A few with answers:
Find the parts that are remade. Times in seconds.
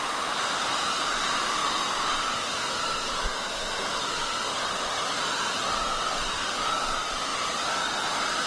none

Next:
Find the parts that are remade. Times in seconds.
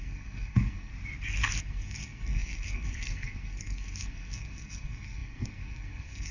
0.0-0.9 (codec, SNAC); 1.6-6.3